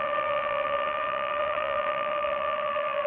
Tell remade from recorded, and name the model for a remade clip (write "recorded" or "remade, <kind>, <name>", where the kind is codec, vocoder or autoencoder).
remade, vocoder, WaveNeXt